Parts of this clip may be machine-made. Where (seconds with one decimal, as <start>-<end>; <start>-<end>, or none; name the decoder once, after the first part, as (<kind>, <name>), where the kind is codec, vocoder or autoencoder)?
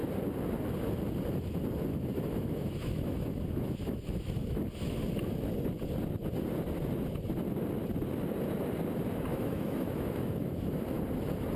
1.9-4.6 (autoencoder, DAC-VAE); 9.3-11.0